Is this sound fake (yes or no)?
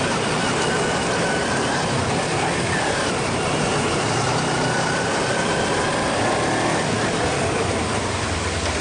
yes